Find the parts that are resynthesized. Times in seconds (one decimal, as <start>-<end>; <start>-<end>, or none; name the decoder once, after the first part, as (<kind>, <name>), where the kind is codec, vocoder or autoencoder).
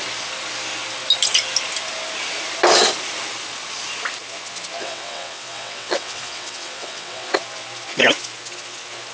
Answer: 4.8-7.3 (vocoder, WaveNeXt)